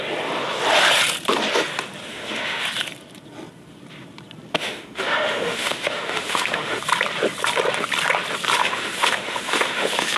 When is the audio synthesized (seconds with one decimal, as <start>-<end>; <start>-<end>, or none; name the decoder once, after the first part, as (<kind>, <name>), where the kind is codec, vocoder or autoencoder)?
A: 2.1-2.6 (autoencoder, DAC-VAE); 4.5-6.8; 8.6-10.2